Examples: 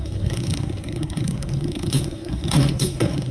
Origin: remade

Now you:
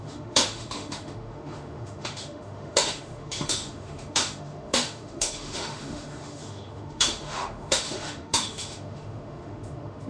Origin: remade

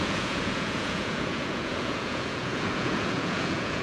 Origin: remade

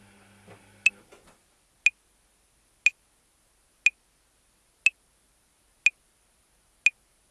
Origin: recorded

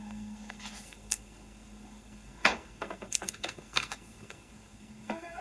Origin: remade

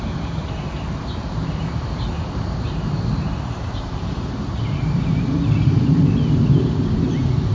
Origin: remade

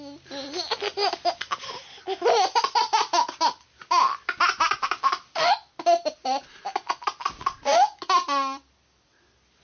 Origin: recorded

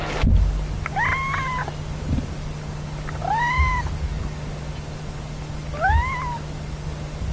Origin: recorded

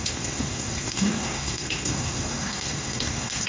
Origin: remade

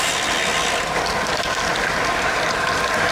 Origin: recorded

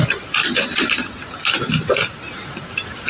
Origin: recorded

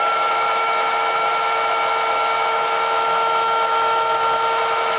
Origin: remade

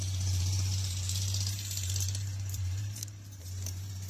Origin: remade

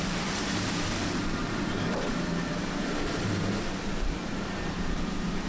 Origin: remade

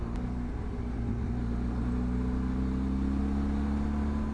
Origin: recorded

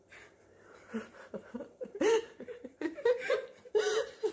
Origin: remade